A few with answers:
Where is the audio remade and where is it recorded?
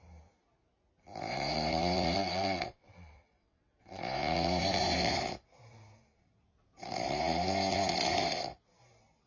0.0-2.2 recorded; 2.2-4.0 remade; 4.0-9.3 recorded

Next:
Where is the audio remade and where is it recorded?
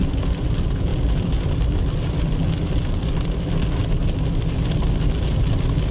0.0-5.9 recorded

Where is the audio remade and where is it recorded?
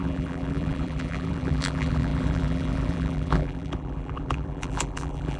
0.0-5.4 remade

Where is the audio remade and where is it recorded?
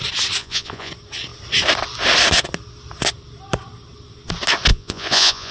0.0-0.4 recorded; 0.4-0.9 remade; 0.9-4.7 recorded; 4.7-5.5 remade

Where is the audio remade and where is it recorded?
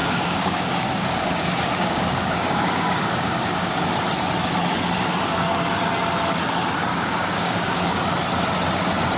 0.0-3.7 remade; 3.7-6.9 recorded; 6.9-8.0 remade; 8.0-9.2 recorded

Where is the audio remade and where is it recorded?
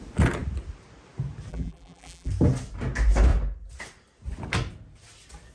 0.0-1.5 recorded; 1.5-2.3 remade; 2.3-5.5 recorded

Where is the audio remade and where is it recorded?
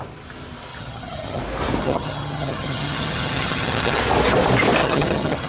0.0-0.7 recorded; 0.7-1.4 remade; 1.4-1.8 recorded; 1.8-4.0 remade; 4.0-4.8 recorded; 4.8-5.5 remade